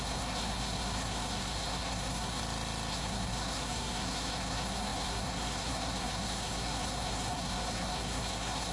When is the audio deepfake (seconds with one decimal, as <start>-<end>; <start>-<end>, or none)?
0.0-2.4; 2.9-8.7